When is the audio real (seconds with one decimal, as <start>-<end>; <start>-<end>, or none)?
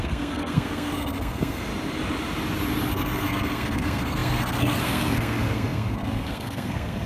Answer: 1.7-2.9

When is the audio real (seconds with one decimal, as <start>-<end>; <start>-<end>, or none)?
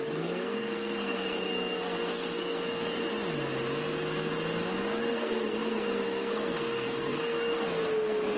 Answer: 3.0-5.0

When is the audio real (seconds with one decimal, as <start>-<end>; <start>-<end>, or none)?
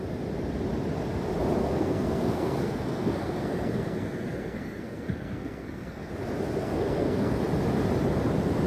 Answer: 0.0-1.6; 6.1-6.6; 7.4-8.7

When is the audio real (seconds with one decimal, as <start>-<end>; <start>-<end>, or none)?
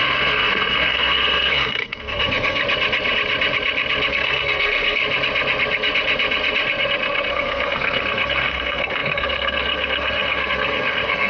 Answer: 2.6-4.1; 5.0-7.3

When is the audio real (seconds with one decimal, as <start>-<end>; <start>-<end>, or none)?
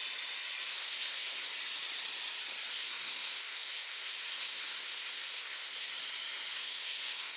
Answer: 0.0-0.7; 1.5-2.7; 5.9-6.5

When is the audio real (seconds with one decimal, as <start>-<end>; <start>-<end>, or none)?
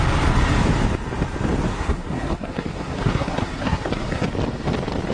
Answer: 0.0-1.7; 4.3-5.1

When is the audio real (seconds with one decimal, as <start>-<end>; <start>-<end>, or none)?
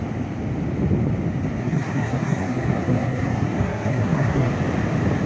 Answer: 0.0-1.6; 4.5-5.3